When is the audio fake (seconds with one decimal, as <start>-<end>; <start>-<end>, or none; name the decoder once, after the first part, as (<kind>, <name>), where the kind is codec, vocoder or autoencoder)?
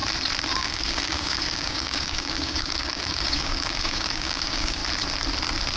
0.5-4.8 (codec, DAC)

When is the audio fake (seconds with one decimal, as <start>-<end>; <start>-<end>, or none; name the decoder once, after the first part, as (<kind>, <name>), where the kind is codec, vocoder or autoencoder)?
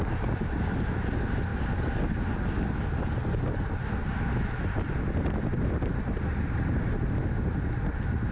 none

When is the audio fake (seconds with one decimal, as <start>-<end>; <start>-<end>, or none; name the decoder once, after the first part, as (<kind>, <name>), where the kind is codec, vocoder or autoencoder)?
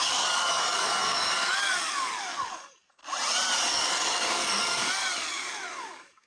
0.0-3.0 (codec, DAC); 3.7-6.3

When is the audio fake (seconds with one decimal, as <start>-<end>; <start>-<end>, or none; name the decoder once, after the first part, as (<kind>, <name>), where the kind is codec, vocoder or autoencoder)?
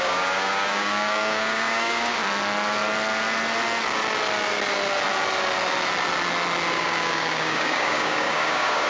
0.0-2.2 (codec, DAC); 6.7-8.9